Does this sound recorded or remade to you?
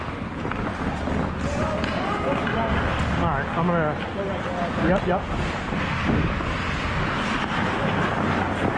recorded